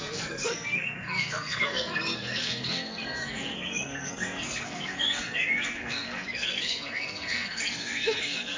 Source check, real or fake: fake